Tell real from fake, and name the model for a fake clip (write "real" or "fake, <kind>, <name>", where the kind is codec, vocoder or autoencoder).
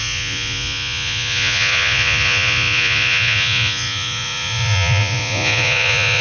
fake, vocoder, Vocos